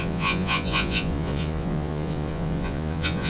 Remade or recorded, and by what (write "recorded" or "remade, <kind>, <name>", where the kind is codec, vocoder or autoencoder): remade, vocoder, Vocos